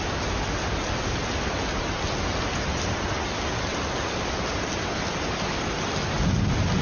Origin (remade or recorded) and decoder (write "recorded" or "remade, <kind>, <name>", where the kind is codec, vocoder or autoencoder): recorded